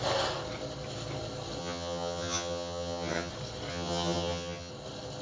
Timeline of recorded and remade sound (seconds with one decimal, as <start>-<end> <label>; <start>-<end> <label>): 0.0-1.6 recorded; 1.6-3.3 remade; 3.3-3.7 recorded; 3.7-4.7 remade; 4.7-5.2 recorded